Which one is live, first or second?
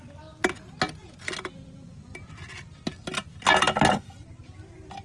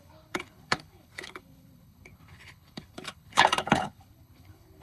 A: first